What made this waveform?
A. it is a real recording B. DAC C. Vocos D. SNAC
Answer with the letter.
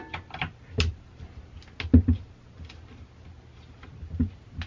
A